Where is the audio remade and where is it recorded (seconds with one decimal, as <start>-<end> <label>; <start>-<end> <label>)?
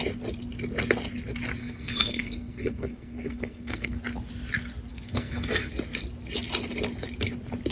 0.0-1.6 recorded; 1.6-4.0 remade; 4.0-4.9 recorded; 4.9-5.7 remade; 5.7-7.7 recorded